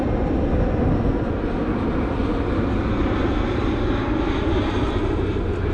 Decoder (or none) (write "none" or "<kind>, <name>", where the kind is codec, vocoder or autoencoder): none